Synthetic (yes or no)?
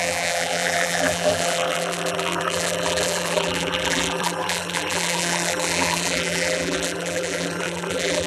yes